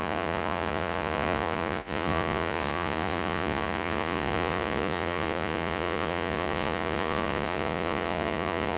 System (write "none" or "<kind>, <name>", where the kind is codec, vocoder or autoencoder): vocoder, Vocos